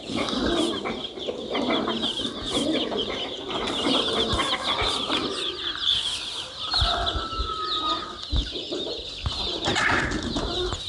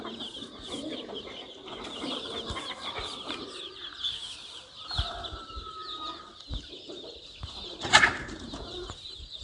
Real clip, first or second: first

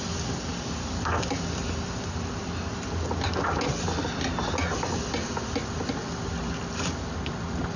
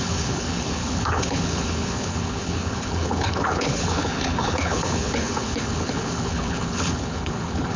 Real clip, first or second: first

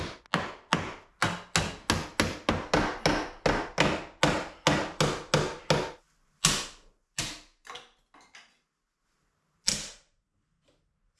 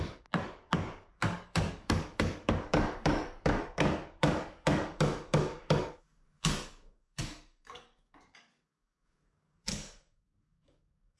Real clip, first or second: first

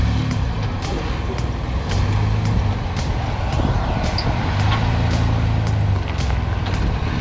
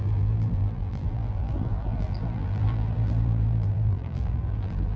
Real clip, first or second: first